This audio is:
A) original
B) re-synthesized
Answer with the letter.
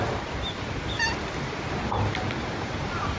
B